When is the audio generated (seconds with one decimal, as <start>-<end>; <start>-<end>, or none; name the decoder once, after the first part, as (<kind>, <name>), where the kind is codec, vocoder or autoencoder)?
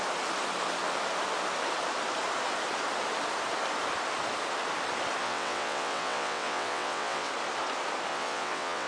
5.2-7.3 (vocoder, WaveNeXt); 8.1-8.9